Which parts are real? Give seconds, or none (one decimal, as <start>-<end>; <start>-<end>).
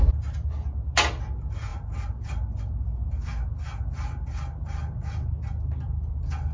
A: 0.0-6.5